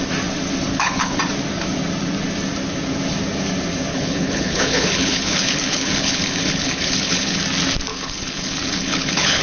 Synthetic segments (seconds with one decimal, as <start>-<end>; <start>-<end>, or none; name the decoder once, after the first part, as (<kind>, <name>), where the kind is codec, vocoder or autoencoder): 0.7-1.2 (codec, HILCodec); 3.9-7.4; 7.9-9.4